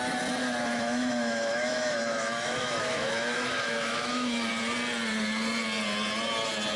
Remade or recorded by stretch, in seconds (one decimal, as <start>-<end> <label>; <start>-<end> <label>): 0.0-0.4 recorded; 0.4-4.5 remade; 4.5-6.8 recorded